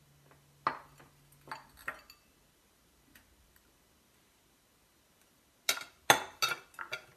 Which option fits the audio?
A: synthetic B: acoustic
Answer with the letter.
B